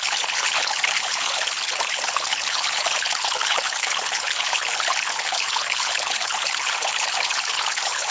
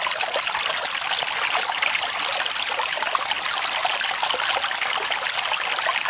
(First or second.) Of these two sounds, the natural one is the second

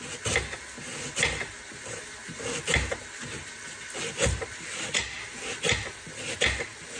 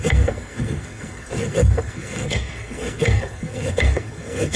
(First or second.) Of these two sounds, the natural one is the first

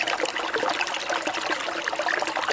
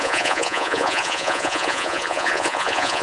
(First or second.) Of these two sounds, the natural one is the first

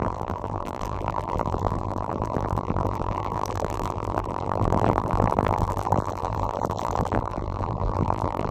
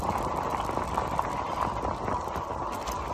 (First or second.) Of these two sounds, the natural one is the second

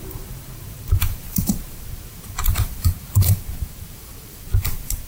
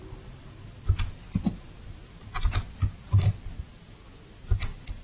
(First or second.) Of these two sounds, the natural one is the second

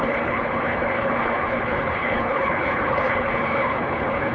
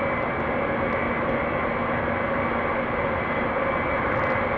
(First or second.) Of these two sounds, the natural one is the second